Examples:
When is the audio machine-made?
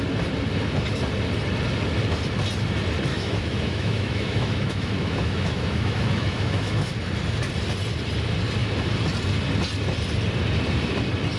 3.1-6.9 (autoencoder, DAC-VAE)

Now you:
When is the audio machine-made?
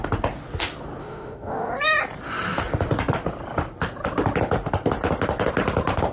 1.0-1.7 (autoencoder, DAC-VAE)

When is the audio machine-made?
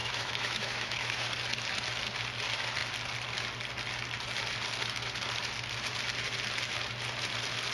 0.0-1.3 (autoencoder, DAC-VAE)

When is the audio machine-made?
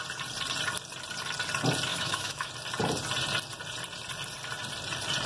1.9-2.5 (autoencoder, DAC-VAE)